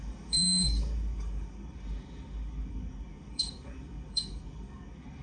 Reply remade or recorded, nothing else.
remade